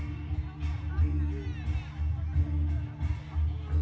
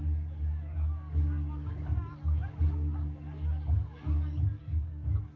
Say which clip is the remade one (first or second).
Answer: second